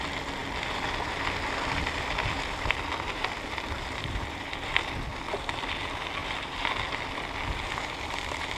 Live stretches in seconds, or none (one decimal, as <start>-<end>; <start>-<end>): 0.0-0.4; 4.7-6.2; 6.7-8.6